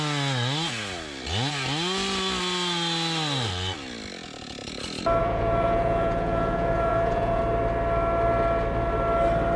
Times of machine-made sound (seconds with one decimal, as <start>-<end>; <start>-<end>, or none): 5.2-7.4